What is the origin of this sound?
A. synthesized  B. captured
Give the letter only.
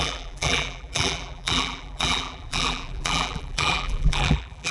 A